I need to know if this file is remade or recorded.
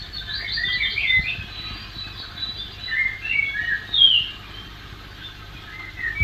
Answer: recorded